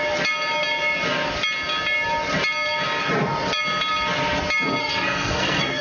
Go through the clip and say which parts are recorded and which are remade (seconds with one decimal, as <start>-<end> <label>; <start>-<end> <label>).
0.0-4.8 recorded; 4.8-5.8 remade